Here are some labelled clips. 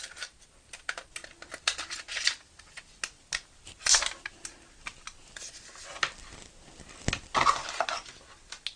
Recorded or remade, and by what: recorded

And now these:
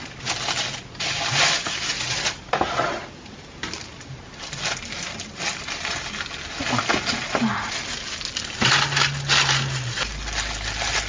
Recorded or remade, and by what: recorded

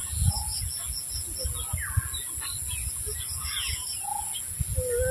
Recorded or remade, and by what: recorded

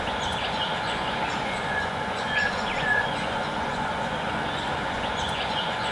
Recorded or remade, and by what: remade, vocoder, Vocos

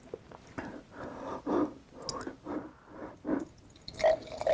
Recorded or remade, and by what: recorded